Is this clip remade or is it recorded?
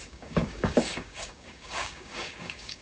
remade